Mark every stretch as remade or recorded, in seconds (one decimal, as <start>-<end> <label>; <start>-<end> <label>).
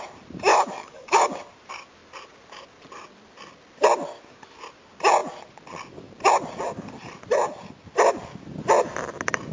0.0-0.5 recorded; 0.5-1.4 remade; 1.4-9.5 recorded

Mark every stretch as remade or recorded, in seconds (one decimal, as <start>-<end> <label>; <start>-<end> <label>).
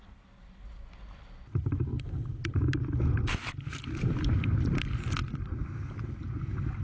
0.0-6.8 recorded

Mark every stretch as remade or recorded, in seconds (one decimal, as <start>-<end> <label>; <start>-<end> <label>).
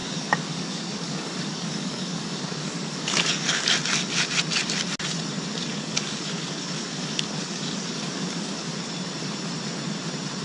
0.0-3.7 remade; 3.7-5.7 recorded; 5.7-8.7 remade; 8.7-10.4 recorded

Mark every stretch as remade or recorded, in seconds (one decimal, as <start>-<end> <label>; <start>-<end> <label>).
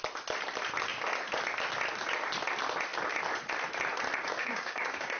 0.0-4.4 recorded; 4.4-5.2 remade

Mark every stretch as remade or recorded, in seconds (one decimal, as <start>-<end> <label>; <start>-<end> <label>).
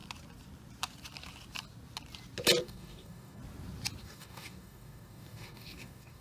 0.0-2.6 recorded; 2.6-3.4 remade; 3.4-4.0 recorded; 4.0-6.2 remade